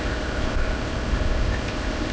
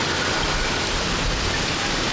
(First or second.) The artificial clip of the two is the first